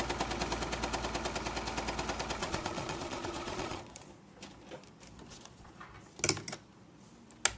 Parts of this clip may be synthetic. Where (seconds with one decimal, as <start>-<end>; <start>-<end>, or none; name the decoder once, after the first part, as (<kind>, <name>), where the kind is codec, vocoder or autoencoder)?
2.4-4.1 (vocoder, Vocos); 5.3-5.8